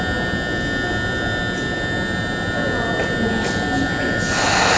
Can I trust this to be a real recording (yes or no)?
yes